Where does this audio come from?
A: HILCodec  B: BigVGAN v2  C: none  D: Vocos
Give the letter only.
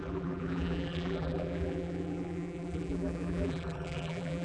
B